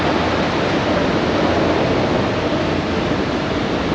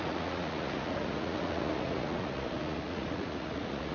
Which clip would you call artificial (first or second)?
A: second